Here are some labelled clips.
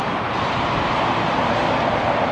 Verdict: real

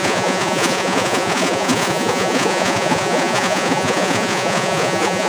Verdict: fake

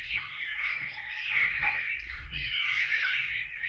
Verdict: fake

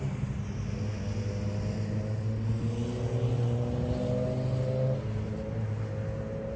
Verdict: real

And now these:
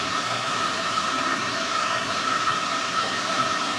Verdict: fake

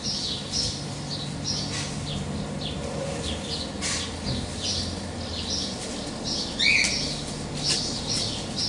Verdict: real